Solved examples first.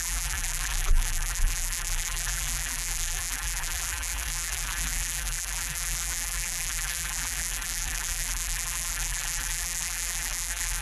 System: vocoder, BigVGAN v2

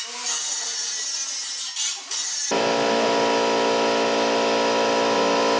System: none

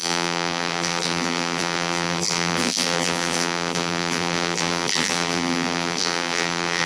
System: vocoder, BigVGAN v2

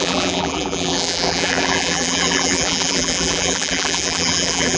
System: vocoder, BigVGAN v2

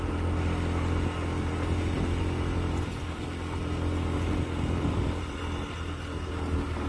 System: none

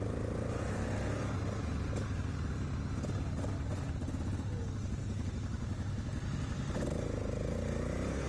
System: none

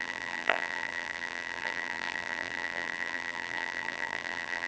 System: vocoder, BigVGAN v2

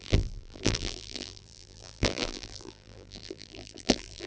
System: vocoder, BigVGAN v2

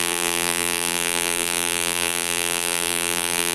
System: vocoder, BigVGAN v2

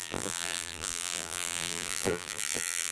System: vocoder, BigVGAN v2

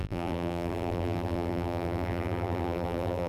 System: vocoder, BigVGAN v2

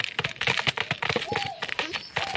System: vocoder, BigVGAN v2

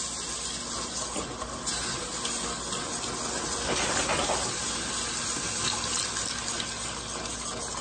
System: none